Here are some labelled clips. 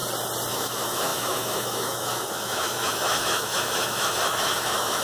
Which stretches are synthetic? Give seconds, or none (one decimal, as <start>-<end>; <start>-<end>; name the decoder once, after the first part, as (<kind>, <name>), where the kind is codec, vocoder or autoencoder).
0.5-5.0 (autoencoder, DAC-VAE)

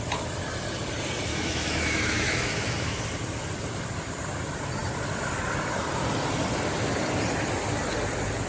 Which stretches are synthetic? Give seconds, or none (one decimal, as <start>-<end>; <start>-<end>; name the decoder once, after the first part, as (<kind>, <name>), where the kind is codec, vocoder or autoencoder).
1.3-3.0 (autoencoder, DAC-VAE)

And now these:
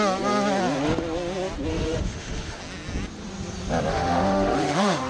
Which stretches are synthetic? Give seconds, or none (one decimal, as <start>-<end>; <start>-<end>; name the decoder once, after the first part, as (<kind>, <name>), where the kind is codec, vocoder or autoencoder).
1.7-2.6 (autoencoder, DAC-VAE); 3.9-5.1